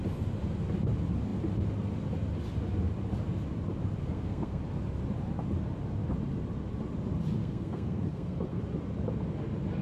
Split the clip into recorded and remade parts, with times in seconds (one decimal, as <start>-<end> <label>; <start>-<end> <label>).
0.0-4.0 recorded; 4.0-4.6 remade; 4.6-7.4 recorded; 7.4-8.6 remade; 8.6-9.8 recorded